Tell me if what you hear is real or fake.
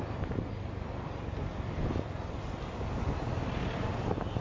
real